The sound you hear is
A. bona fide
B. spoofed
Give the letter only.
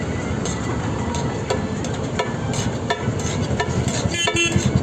A